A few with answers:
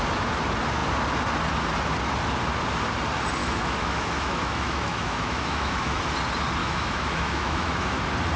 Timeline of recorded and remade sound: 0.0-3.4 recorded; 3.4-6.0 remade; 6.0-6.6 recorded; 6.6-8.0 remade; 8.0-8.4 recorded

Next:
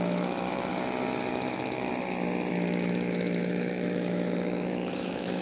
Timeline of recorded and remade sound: 0.0-0.7 remade; 0.7-1.3 recorded; 1.3-1.9 remade; 1.9-2.5 recorded; 2.5-5.4 remade

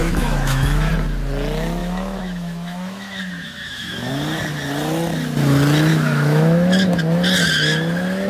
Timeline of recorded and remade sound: 0.0-0.9 remade; 0.9-1.8 recorded; 1.8-4.1 remade; 4.1-5.9 recorded; 5.9-7.0 remade; 7.0-8.3 recorded

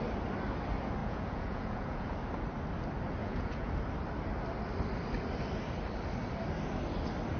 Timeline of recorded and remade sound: 0.0-1.0 recorded; 1.0-2.1 remade; 2.1-3.2 recorded; 3.2-3.7 remade; 3.7-7.4 recorded

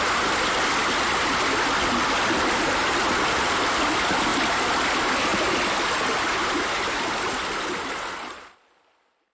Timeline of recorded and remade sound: 0.0-9.3 recorded

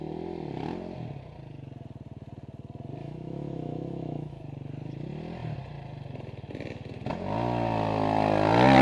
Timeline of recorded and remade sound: 0.0-3.0 recorded; 3.0-4.4 remade; 4.4-8.8 recorded

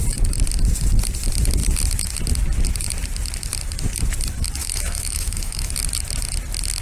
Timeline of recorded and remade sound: 0.0-4.6 recorded; 4.6-5.7 remade; 5.7-6.8 recorded

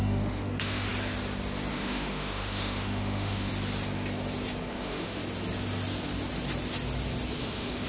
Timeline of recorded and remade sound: 0.0-0.9 remade; 0.9-1.7 recorded; 1.7-3.5 remade; 3.5-4.7 recorded; 4.7-5.2 remade; 5.2-7.4 recorded; 7.4-7.9 remade